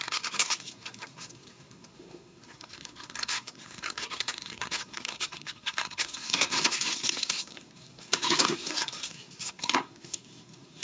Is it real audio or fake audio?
fake